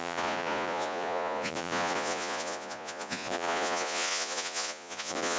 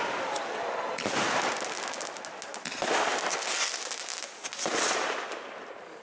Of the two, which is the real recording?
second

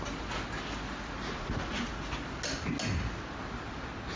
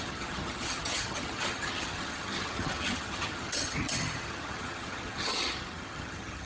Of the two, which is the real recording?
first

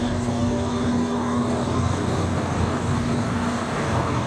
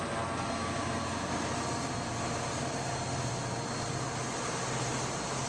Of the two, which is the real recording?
second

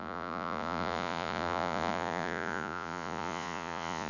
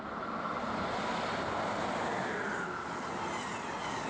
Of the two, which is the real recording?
second